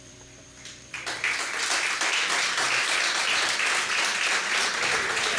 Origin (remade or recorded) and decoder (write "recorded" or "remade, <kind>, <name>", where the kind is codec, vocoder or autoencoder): remade, vocoder, BigVGAN v2